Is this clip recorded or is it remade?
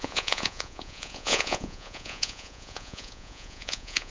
remade